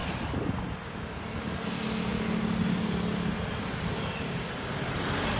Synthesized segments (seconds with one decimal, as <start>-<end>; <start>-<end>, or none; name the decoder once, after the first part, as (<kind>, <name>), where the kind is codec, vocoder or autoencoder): 0.0-0.6 (vocoder, BigVGAN v2)